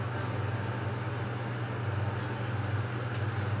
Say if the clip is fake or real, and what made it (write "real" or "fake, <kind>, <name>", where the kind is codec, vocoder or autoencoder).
real